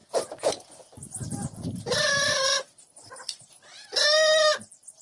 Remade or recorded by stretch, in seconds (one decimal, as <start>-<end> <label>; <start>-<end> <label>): 0.0-5.0 recorded